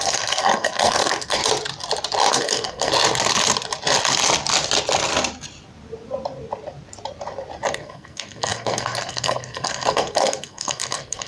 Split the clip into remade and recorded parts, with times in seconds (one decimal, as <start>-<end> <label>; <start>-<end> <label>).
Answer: 0.0-1.4 remade; 1.4-2.3 recorded; 2.3-2.9 remade; 2.9-7.7 recorded; 7.7-11.3 remade